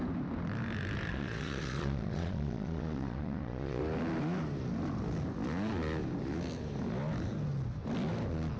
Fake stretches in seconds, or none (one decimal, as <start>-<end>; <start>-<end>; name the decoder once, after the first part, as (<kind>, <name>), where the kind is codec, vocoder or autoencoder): 1.1-3.8 (vocoder, Vocos)